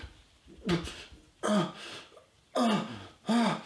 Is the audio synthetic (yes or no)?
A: no